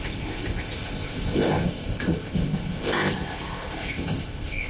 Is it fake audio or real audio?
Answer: fake